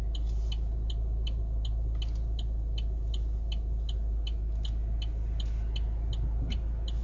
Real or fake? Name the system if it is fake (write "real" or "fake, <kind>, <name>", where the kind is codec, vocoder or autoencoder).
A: real